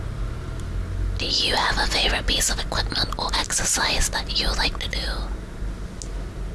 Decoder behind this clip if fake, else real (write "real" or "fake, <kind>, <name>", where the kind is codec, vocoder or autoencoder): real